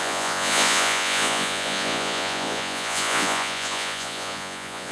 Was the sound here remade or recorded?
remade